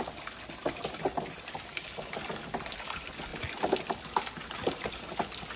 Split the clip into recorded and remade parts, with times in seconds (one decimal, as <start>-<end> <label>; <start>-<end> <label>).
0.0-5.6 recorded